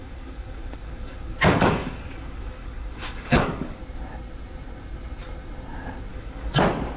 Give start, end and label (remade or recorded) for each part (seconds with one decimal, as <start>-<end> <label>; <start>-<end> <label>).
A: 0.0-3.8 remade; 3.8-6.1 recorded; 6.1-6.6 remade; 6.6-7.0 recorded